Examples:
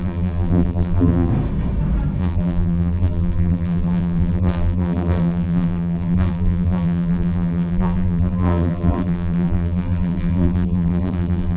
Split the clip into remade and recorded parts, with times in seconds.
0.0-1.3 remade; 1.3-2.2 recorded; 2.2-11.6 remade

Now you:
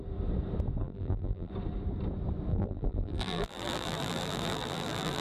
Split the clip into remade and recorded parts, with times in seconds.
0.0-0.8 recorded; 0.8-1.5 remade; 1.5-2.5 recorded; 2.5-5.2 remade

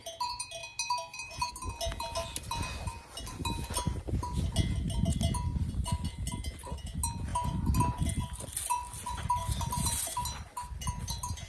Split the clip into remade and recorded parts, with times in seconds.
0.0-9.4 recorded; 9.4-10.2 remade; 10.2-11.5 recorded

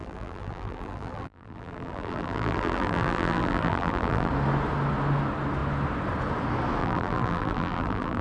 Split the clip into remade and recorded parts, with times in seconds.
0.0-4.3 remade; 4.3-6.8 recorded; 6.8-8.2 remade

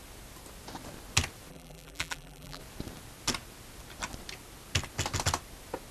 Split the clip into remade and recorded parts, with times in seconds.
0.0-1.5 recorded; 1.5-2.6 remade; 2.6-5.9 recorded

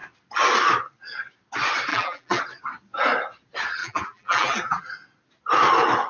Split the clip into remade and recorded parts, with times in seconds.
0.0-1.9 recorded; 1.9-2.4 remade; 2.4-3.8 recorded; 3.8-4.8 remade; 4.8-6.1 recorded